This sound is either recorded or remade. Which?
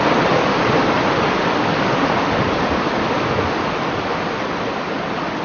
recorded